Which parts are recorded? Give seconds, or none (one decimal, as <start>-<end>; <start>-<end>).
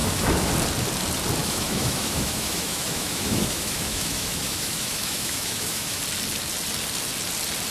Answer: 0.5-1.4; 6.0-7.7